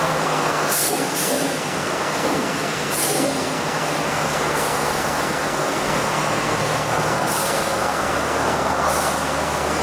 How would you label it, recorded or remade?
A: remade